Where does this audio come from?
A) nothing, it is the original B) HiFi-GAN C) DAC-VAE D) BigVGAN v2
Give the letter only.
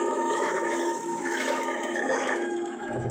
C